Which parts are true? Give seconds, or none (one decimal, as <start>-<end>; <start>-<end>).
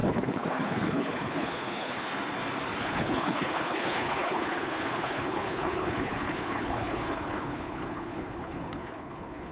2.1-2.8